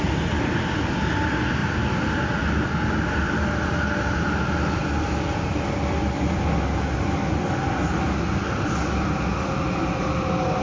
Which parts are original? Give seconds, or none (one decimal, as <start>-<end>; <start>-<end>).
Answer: 0.0-10.6